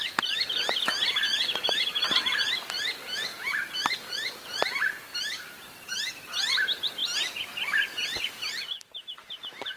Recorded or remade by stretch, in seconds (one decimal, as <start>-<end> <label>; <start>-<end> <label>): 0.0-1.3 recorded; 1.3-2.4 remade; 2.4-3.3 recorded; 3.3-4.1 remade; 4.1-5.1 recorded; 5.1-6.1 remade; 6.1-7.0 recorded; 7.0-9.8 remade